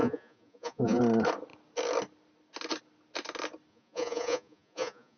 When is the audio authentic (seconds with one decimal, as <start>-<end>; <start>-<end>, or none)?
1.0-3.7